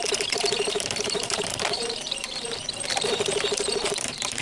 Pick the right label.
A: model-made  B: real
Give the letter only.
A